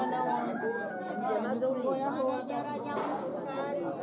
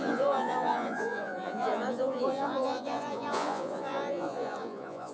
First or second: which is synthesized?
second